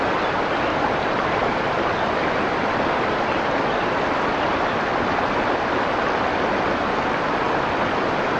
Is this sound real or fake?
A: real